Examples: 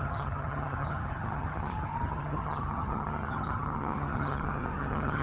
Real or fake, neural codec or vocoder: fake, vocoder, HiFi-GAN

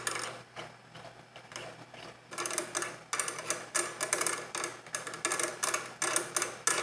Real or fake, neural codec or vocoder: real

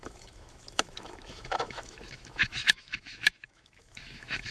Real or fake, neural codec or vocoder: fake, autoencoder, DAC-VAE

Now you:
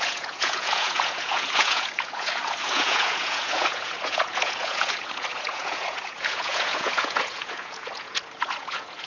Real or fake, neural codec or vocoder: fake, vocoder, Vocos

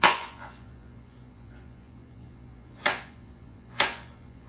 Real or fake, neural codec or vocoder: fake, vocoder, Vocos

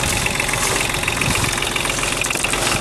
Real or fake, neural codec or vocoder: real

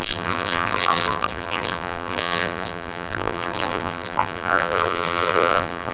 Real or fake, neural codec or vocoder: fake, vocoder, BigVGAN v2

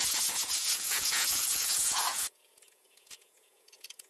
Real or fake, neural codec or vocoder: fake, vocoder, Vocos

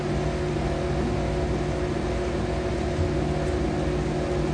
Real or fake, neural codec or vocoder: real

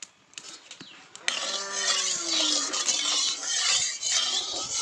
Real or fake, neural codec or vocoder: real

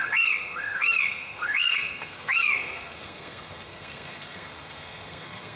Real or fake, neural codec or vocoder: fake, codec, SNAC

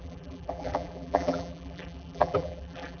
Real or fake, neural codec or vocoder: fake, vocoder, BigVGAN v2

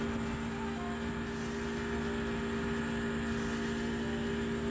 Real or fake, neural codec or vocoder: real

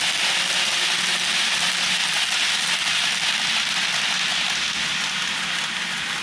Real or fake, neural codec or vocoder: real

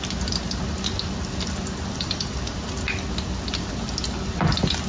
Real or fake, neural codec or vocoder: real